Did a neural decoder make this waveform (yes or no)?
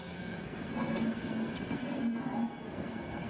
yes